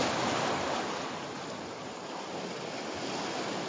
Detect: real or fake real